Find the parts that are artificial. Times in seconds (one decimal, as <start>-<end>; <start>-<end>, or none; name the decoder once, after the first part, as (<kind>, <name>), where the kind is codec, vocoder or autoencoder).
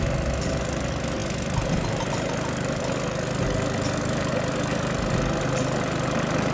none